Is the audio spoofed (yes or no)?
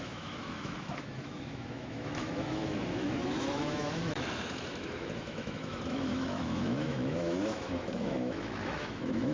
yes